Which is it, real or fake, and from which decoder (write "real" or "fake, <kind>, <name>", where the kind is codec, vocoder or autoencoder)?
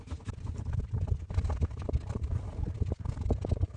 real